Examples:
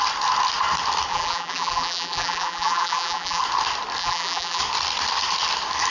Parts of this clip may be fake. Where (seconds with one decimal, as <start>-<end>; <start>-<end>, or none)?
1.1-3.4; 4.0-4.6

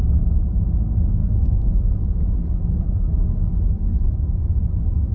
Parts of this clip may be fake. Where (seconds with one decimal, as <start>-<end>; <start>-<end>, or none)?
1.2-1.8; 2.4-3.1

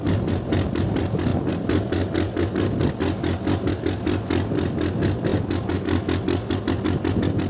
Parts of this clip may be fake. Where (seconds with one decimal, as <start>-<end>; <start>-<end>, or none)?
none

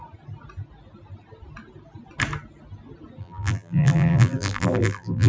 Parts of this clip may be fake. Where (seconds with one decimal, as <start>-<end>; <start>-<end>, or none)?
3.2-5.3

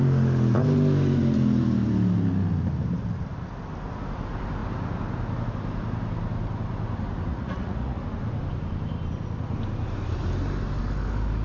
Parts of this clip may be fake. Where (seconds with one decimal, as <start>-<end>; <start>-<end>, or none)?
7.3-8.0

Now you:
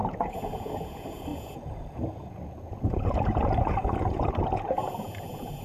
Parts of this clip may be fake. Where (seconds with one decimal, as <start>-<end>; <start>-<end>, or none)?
0.0-5.6

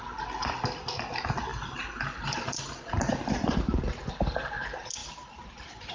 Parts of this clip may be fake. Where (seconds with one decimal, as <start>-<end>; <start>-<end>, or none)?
1.5-4.1; 5.0-5.9

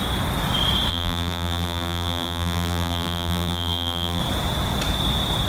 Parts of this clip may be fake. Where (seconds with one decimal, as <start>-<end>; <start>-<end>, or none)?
0.9-4.2